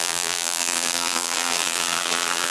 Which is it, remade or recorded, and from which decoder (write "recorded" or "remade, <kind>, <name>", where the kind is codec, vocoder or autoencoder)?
remade, vocoder, BigVGAN v2